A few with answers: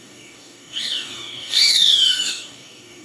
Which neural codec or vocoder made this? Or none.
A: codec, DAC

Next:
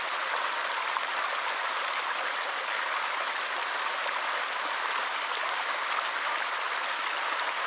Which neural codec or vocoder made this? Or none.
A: none